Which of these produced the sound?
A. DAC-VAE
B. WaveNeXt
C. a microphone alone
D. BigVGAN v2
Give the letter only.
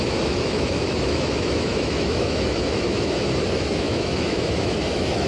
A